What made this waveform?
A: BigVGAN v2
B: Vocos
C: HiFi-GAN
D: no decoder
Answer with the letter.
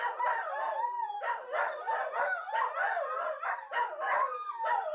D